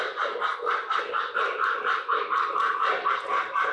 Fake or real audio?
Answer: fake